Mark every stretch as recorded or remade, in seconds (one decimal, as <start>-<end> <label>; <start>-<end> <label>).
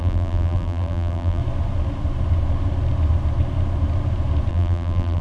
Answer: 0.0-1.4 remade; 1.4-4.5 recorded; 4.5-5.2 remade